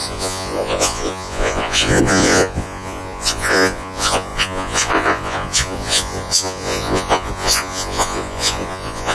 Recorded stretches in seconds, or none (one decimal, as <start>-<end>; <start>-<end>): none